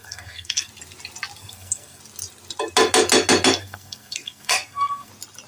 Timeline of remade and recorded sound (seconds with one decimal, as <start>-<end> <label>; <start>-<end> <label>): 0.0-0.7 remade; 0.7-1.4 recorded; 1.4-2.0 remade; 2.0-3.6 recorded; 3.6-5.1 remade; 5.1-5.5 recorded